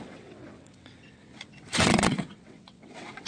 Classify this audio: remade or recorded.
remade